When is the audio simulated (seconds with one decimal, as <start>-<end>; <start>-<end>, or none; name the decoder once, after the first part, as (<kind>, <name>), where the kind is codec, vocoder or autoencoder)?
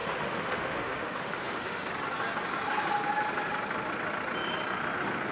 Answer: 0.0-1.8 (autoencoder, DAC-VAE)